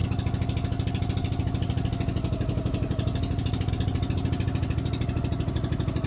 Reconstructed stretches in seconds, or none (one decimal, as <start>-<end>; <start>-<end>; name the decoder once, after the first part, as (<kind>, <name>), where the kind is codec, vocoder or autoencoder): none